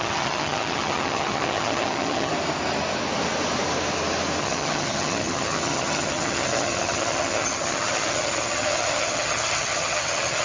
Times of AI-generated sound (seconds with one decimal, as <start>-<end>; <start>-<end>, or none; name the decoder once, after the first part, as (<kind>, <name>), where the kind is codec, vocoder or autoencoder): 0.0-2.3 (vocoder, HiFi-GAN); 4.4-10.4